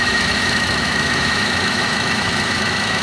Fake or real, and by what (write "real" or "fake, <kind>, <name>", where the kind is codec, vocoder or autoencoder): fake, autoencoder, DAC-VAE